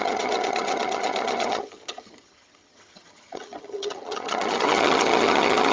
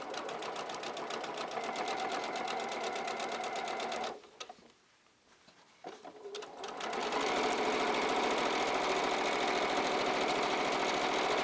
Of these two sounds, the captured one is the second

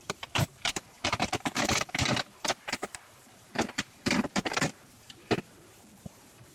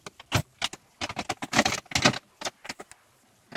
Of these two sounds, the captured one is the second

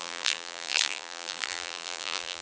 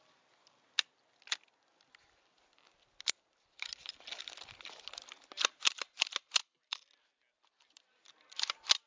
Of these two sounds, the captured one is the second